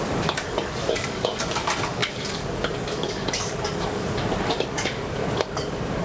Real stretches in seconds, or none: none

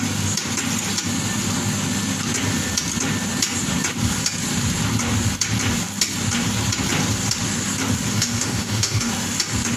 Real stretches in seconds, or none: 0.0-8.1; 9.1-9.8

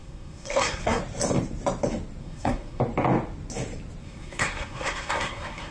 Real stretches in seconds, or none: 1.0-2.2; 2.8-4.0

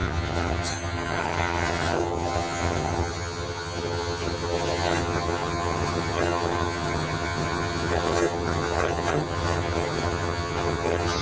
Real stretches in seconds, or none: none

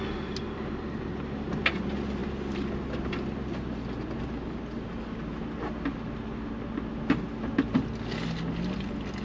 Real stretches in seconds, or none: 0.0-9.2

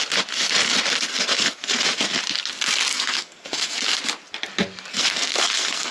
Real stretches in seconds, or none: 0.0-1.1; 2.2-2.9; 3.9-4.9

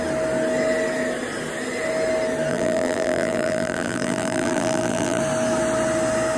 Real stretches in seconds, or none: 0.0-2.5; 5.2-6.4

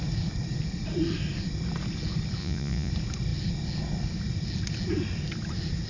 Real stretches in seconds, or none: 0.0-2.4; 2.9-5.9